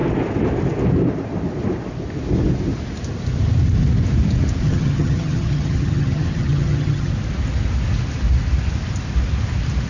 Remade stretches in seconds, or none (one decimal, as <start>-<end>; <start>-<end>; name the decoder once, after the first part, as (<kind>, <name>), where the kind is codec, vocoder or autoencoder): 4.6-7.1 (vocoder, HiFi-GAN)